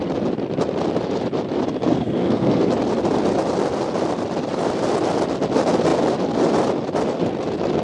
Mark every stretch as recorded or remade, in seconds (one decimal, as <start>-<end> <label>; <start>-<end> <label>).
0.0-1.9 recorded; 1.9-2.7 remade; 2.7-7.8 recorded